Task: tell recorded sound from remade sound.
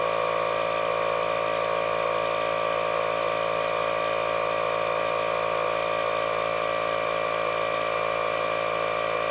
recorded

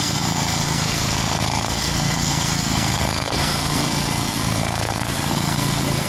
remade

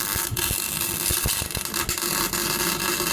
recorded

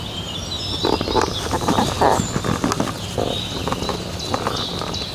recorded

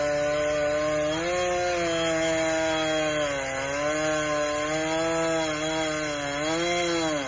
recorded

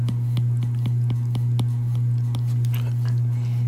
recorded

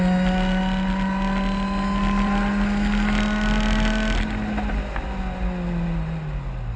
recorded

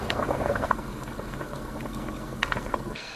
remade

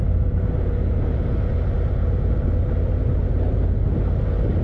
recorded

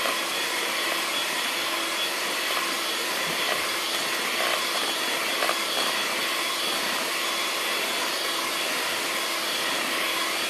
recorded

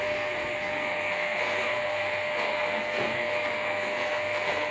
remade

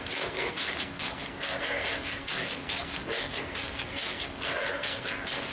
remade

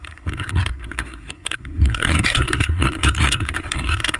remade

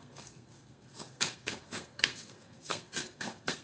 remade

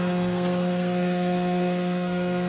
remade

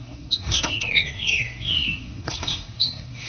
remade